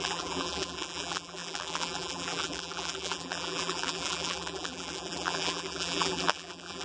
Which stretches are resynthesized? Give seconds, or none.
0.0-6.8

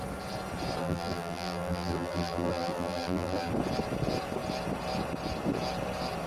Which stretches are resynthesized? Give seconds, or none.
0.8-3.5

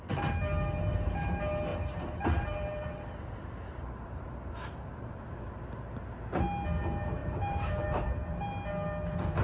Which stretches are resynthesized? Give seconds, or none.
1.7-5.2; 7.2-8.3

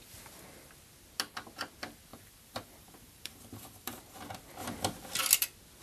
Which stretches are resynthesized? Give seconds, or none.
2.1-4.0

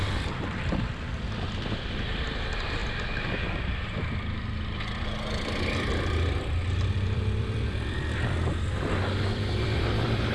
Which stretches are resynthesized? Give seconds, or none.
0.0-2.8; 3.4-10.3

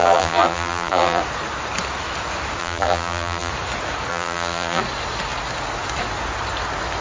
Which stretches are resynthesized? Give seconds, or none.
0.0-1.2; 2.6-3.5; 4.1-4.8

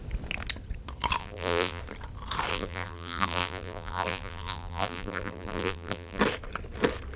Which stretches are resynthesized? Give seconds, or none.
1.2-1.8; 2.5-6.2

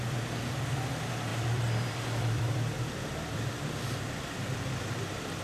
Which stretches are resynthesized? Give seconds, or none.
1.3-4.5